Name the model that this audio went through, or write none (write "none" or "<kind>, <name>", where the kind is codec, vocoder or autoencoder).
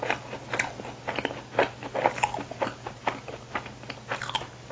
none